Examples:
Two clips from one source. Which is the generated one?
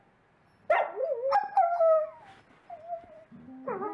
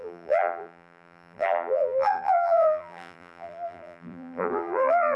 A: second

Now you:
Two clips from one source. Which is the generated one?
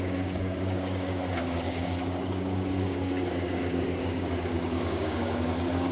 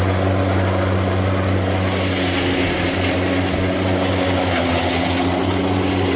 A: first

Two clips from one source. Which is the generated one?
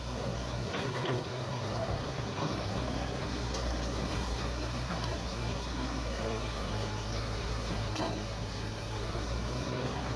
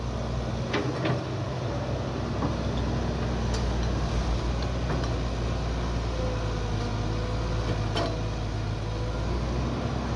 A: first